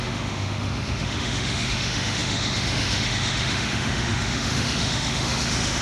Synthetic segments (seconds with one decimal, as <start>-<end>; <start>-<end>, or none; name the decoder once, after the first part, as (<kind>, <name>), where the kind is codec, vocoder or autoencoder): 0.0-5.8 (autoencoder, DAC-VAE)